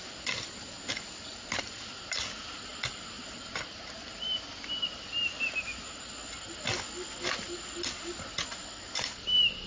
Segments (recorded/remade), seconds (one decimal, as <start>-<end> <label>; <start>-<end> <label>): 0.0-9.7 recorded